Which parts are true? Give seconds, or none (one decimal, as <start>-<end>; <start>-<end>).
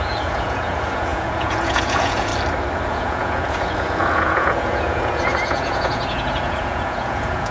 2.3-2.9